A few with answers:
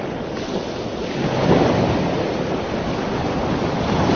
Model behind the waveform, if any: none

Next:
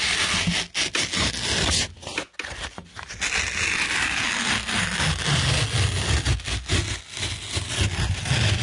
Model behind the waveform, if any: none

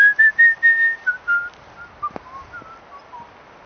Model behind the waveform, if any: none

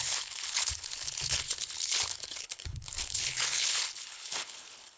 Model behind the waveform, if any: codec, HILCodec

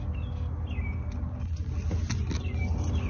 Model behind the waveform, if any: none